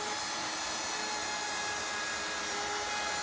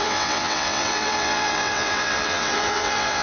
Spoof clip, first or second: second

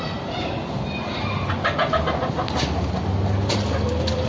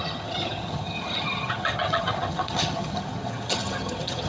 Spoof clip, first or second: second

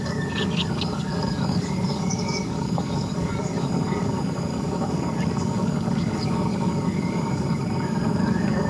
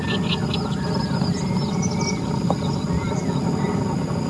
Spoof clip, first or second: first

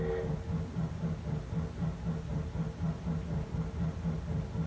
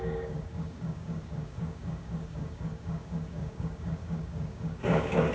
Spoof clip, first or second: second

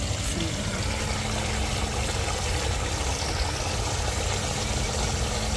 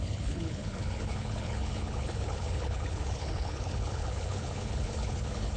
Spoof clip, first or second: second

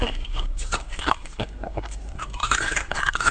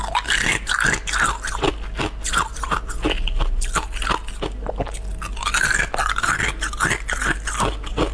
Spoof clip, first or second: first